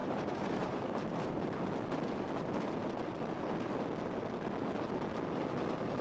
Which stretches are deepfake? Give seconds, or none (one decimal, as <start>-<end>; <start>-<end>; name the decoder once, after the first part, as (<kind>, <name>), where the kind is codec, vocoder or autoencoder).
0.0-1.7 (vocoder, BigVGAN v2)